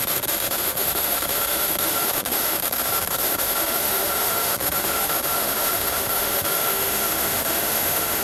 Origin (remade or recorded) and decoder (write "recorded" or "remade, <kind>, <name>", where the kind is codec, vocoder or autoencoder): remade, autoencoder, DAC-VAE